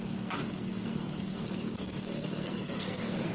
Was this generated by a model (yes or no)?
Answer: yes